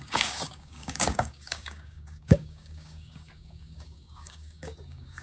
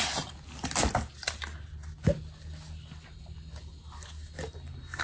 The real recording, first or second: second